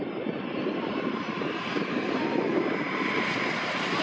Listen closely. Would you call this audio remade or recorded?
remade